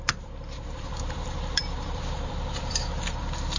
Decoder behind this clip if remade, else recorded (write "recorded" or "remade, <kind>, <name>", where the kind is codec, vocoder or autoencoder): remade, vocoder, BigVGAN v2